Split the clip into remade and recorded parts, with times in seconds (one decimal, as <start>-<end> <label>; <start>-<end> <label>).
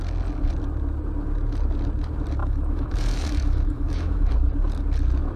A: 0.0-2.4 recorded; 2.4-4.3 remade; 4.3-5.4 recorded